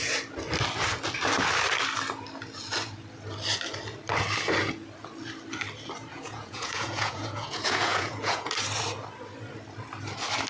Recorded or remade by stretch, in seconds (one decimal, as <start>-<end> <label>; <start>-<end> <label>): 0.0-6.1 recorded; 6.1-8.5 remade; 8.5-10.5 recorded